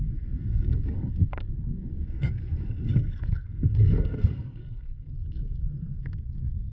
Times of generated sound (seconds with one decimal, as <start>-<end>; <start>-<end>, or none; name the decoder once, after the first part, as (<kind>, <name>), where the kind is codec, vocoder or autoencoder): 0.0-6.7 (codec, SNAC)